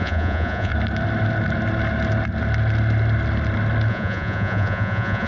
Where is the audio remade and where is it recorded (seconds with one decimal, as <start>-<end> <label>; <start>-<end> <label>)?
0.0-0.7 remade; 0.7-3.9 recorded; 3.9-5.3 remade